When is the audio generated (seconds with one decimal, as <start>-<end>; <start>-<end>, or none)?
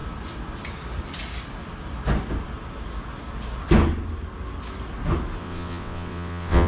5.4-6.7